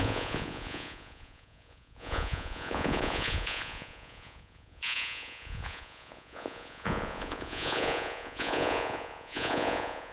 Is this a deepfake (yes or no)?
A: yes